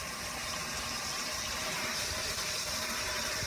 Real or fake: fake